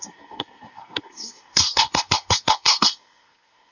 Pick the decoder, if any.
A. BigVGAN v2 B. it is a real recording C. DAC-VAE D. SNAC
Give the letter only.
D